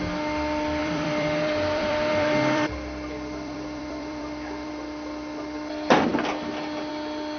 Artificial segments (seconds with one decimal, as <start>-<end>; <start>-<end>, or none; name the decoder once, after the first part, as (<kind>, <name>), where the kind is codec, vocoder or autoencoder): 0.8-4.7 (vocoder, BigVGAN v2)